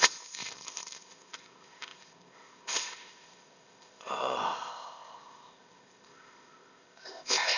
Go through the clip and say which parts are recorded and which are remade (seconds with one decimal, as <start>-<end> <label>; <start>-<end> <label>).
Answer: 0.0-7.6 remade